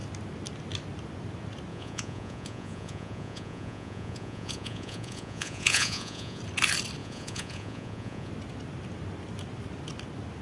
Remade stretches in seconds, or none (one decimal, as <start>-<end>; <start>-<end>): 1.7-6.4; 7.0-8.3